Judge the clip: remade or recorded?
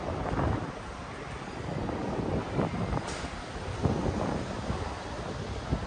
recorded